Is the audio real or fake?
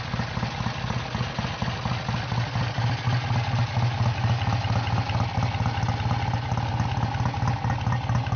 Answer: real